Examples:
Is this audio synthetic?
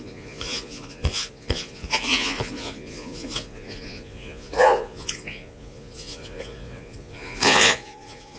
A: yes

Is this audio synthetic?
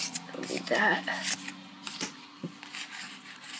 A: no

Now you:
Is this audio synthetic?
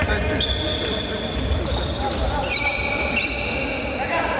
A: no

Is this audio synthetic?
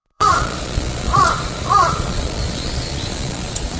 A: yes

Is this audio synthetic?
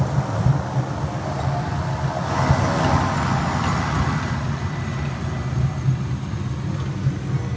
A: no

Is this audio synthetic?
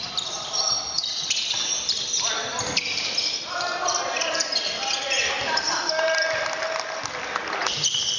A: no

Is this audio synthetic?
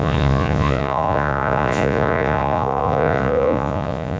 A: yes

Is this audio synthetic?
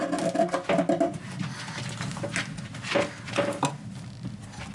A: no